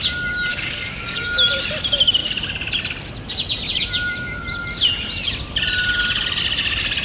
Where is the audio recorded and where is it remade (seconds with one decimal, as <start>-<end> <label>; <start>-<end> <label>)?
0.0-0.5 recorded; 0.5-1.5 remade; 1.5-7.0 recorded